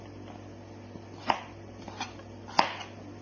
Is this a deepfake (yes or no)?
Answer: no